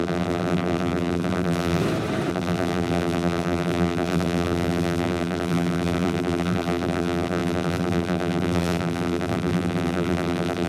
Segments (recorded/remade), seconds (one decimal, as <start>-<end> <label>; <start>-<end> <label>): 0.0-1.8 remade; 1.8-2.3 recorded; 2.3-10.7 remade